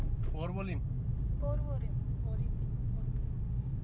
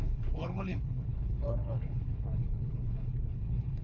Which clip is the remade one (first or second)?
second